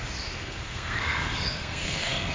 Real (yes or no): no